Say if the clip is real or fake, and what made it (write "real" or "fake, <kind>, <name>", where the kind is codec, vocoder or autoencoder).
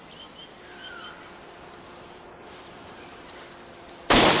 real